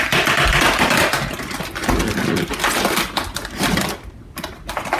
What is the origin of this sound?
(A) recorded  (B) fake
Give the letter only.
A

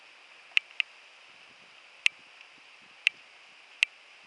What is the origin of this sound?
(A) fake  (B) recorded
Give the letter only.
B